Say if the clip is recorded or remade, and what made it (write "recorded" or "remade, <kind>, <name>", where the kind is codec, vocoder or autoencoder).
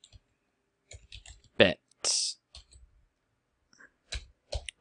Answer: recorded